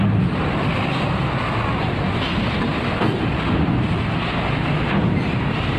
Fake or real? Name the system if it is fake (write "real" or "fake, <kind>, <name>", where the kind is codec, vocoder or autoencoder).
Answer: real